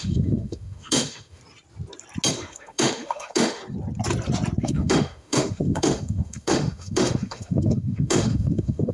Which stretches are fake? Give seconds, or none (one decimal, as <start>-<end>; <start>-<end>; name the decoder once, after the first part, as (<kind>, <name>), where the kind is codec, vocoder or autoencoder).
0.0-1.4 (autoencoder, DAC-VAE); 2.3-3.6; 4.6-8.9